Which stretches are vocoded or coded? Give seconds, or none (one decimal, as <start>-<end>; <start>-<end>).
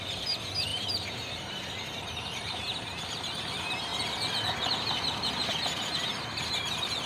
0.7-3.5